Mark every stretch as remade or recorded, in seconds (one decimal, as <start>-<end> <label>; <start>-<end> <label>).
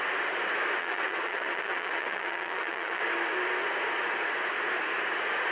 0.0-0.8 recorded; 0.8-3.0 remade; 3.0-5.5 recorded